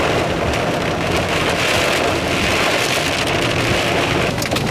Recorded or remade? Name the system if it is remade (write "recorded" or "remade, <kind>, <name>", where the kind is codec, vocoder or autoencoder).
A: recorded